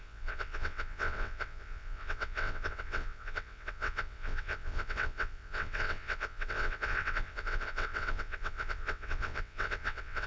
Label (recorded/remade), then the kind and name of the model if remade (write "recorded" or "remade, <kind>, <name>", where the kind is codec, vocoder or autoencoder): remade, vocoder, WaveNeXt